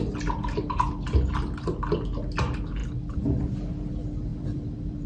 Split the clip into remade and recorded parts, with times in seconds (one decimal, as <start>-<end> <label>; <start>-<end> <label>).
0.0-2.8 recorded; 2.8-3.5 remade; 3.5-4.3 recorded; 4.3-5.1 remade